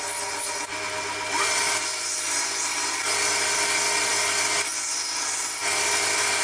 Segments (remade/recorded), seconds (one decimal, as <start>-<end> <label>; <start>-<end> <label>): 0.0-6.4 recorded